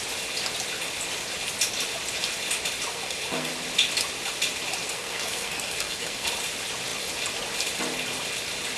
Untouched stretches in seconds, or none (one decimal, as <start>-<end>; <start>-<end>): 0.0-2.9; 3.5-4.8; 6.3-8.8